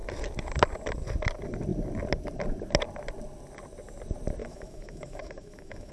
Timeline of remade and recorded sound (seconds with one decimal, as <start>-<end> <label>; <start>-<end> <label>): 0.0-4.4 recorded; 4.4-5.9 remade